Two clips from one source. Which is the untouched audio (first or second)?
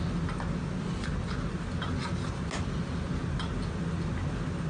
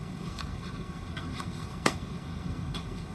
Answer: first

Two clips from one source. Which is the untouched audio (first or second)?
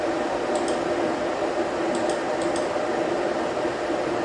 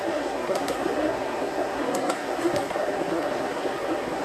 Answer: first